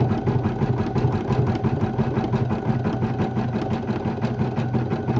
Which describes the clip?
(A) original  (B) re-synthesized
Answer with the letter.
A